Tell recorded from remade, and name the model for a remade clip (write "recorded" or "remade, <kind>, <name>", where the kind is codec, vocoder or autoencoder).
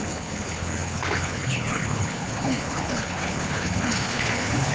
remade, codec, HILCodec